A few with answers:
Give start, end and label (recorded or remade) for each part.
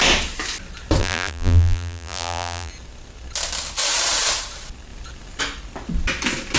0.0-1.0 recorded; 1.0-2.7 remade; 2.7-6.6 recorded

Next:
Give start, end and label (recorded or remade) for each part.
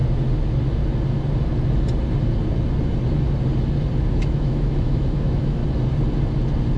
0.0-4.1 recorded; 4.1-5.6 remade; 5.6-6.8 recorded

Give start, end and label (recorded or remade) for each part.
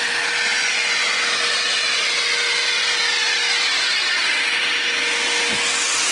0.0-0.6 recorded; 0.6-1.2 remade; 1.2-6.1 recorded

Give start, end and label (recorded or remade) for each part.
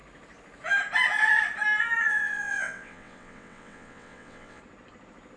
0.0-2.1 recorded; 2.1-4.6 remade; 4.6-5.4 recorded